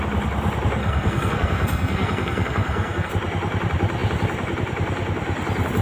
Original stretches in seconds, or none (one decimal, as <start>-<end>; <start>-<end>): 0.0-0.8; 3.1-5.8